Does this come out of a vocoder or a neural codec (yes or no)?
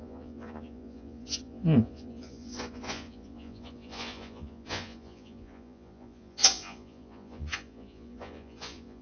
yes